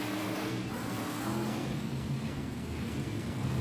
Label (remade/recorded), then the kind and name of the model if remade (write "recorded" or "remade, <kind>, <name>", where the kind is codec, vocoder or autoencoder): remade, codec, SNAC